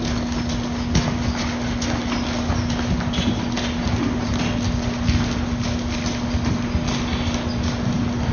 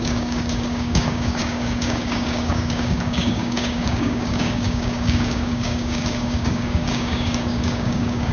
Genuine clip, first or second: first